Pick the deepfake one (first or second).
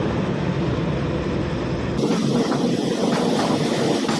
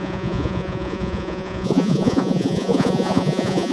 second